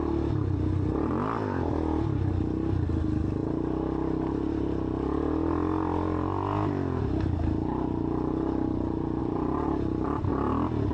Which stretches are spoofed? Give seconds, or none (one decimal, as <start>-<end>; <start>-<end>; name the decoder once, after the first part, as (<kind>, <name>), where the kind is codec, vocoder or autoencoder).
9.2-10.3 (vocoder, BigVGAN v2)